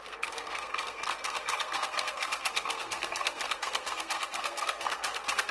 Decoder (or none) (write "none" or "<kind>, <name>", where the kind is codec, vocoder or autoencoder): codec, SNAC